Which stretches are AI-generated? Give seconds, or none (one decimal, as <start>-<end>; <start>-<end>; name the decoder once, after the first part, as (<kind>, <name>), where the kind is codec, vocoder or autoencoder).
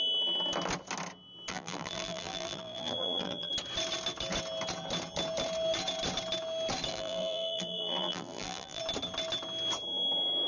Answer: 1.5-3.5 (vocoder, BigVGAN v2); 6.9-8.8